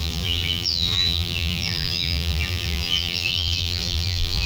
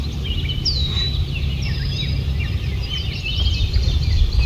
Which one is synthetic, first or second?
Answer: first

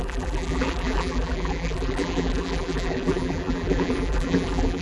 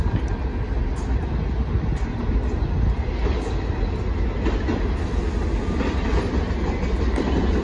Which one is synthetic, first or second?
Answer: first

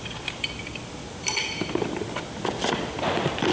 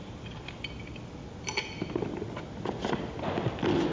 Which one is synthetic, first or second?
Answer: first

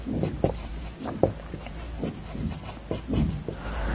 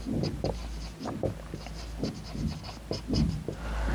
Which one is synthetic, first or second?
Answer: first